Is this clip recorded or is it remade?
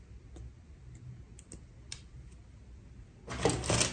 recorded